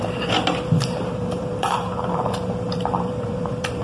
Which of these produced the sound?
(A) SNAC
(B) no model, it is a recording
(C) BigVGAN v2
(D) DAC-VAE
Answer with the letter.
C